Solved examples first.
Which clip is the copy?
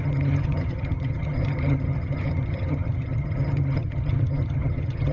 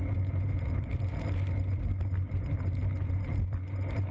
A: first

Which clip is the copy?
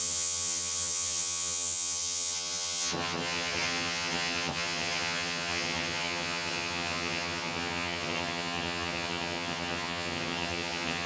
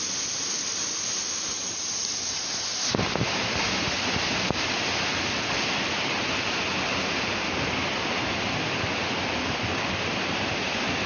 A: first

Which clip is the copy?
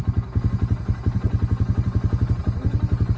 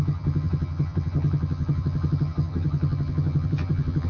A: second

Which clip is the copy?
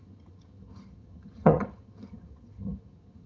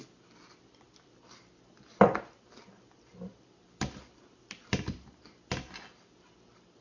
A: first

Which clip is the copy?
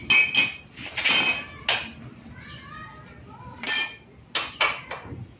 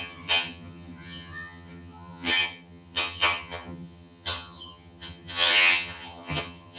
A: second